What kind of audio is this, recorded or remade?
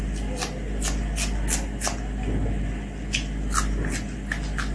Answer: recorded